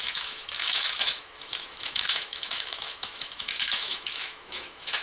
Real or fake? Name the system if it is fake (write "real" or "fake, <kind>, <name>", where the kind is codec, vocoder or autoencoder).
fake, autoencoder, DAC-VAE